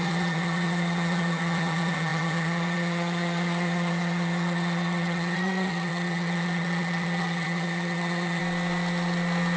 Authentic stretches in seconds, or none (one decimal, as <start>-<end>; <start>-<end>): 8.4-9.6